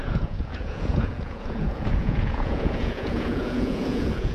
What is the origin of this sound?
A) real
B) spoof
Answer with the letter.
B